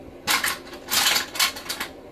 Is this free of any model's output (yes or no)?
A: yes